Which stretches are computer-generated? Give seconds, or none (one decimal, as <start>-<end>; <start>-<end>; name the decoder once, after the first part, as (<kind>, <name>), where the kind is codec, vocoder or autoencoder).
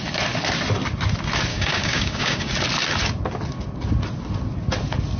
1.5-2.5 (codec, DAC)